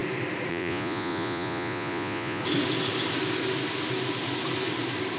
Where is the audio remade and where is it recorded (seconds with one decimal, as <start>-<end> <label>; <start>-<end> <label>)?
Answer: 0.0-0.5 recorded; 0.5-2.4 remade; 2.4-5.2 recorded